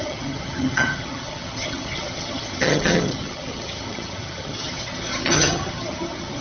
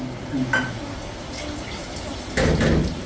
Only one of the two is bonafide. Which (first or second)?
second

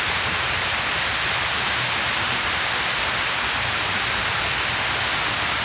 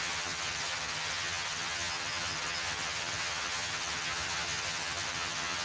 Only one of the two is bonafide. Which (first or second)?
first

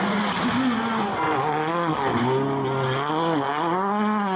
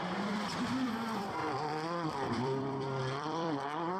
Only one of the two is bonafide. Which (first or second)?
first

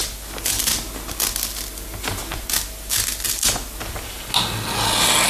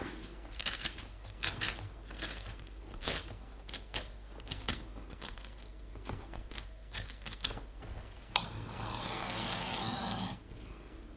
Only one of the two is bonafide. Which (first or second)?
first